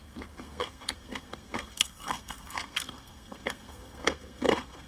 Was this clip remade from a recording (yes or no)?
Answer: yes